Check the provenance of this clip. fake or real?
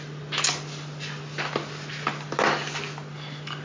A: real